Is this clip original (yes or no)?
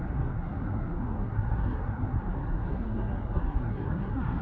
no